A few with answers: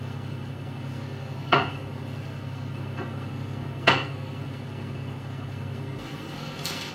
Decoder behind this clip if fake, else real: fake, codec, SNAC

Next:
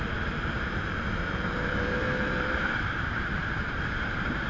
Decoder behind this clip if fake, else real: fake, vocoder, BigVGAN v2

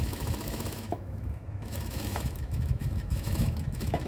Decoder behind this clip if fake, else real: fake, autoencoder, DAC-VAE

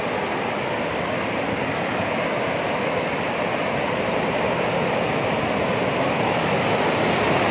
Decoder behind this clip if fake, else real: real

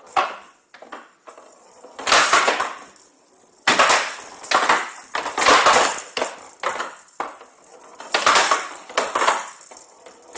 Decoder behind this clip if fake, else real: real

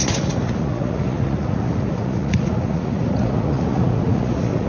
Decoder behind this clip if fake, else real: fake, vocoder, Vocos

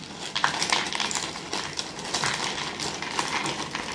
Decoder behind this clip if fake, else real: real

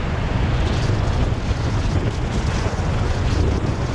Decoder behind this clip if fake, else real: fake, vocoder, Vocos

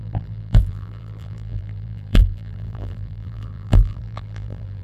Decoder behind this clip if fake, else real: fake, vocoder, BigVGAN v2